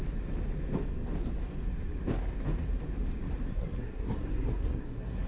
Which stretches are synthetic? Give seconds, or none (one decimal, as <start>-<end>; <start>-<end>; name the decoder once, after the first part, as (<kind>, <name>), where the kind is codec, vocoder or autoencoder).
3.5-5.3 (codec, SNAC)